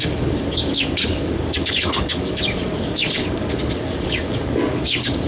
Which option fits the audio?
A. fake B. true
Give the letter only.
A